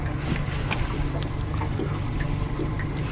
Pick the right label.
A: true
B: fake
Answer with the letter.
A